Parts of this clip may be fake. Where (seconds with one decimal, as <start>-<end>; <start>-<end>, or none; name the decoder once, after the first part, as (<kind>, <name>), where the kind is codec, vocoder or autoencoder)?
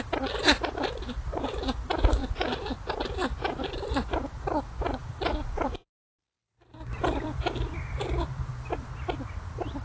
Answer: 0.0-2.2 (vocoder, BigVGAN v2); 4.1-9.8